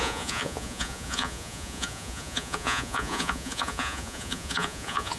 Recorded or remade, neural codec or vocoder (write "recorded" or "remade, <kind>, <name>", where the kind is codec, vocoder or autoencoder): remade, vocoder, Vocos